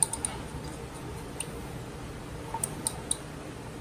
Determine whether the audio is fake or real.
real